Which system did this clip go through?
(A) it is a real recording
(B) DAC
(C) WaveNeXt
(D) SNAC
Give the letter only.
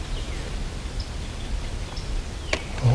A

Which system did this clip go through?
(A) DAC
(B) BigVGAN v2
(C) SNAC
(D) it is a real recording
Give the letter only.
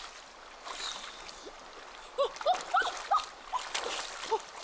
D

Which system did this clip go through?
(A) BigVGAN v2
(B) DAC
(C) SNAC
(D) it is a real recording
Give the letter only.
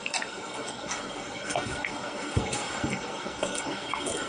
C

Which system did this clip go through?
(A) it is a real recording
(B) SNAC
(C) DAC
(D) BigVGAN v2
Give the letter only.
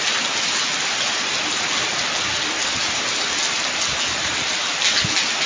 A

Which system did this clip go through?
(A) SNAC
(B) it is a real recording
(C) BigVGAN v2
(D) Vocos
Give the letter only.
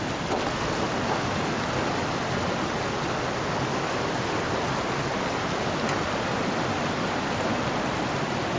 B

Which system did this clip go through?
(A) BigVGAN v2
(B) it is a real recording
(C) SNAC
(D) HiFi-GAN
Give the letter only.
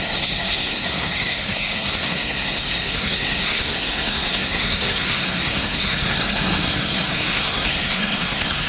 C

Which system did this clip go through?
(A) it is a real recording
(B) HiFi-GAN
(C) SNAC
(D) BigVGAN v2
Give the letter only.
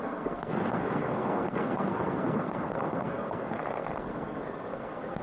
C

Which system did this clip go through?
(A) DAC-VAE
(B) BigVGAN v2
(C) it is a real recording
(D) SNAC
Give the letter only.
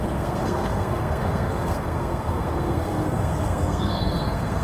D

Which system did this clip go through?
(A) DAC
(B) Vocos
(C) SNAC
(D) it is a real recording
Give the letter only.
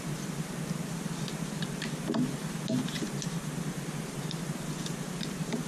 D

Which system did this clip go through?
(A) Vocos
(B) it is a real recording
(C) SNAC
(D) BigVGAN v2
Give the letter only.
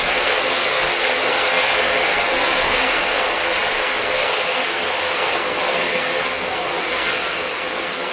C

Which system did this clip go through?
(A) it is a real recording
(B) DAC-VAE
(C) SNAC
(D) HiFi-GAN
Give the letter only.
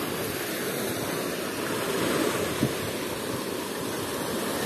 A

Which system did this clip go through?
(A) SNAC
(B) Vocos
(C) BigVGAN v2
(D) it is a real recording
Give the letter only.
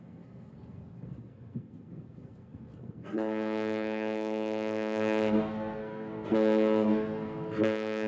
A